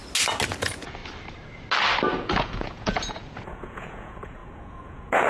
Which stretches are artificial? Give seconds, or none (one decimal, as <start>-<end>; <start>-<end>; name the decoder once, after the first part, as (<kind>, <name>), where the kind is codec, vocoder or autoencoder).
0.5-1.0 (vocoder, Vocos); 2.2-5.3